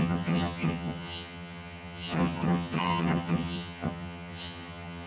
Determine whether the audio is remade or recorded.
remade